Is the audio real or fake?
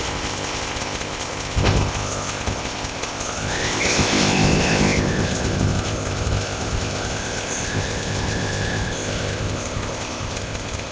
fake